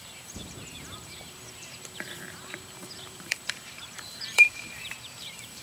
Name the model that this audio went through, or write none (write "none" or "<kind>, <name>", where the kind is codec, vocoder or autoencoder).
vocoder, BigVGAN v2